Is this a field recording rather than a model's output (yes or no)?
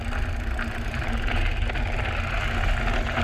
yes